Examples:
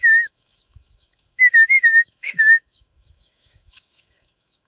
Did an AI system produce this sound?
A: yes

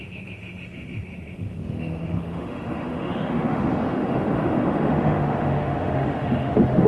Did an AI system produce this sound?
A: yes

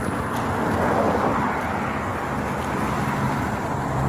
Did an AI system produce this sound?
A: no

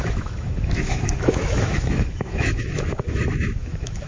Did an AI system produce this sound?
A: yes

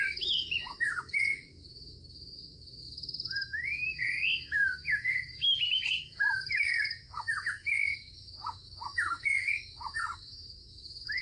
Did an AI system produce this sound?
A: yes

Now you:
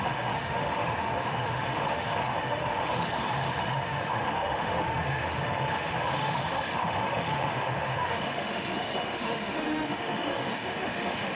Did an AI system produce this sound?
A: yes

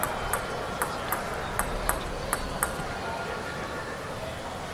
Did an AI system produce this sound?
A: no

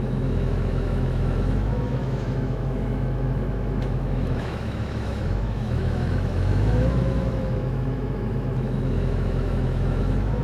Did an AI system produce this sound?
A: yes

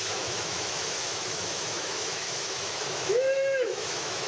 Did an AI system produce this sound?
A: yes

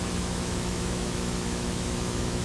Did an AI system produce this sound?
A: yes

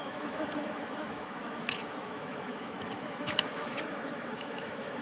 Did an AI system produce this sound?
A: yes